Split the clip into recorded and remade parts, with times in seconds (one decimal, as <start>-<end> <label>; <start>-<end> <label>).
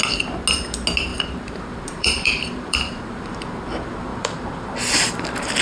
0.0-1.1 recorded; 1.1-3.3 remade; 3.3-4.1 recorded; 4.1-5.1 remade; 5.1-5.6 recorded